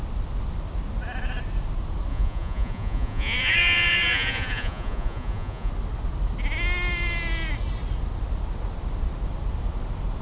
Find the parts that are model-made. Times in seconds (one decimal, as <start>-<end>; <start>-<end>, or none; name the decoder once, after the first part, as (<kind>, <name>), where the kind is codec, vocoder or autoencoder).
2.1-5.7 (vocoder, Vocos)